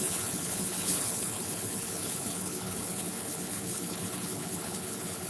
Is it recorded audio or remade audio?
remade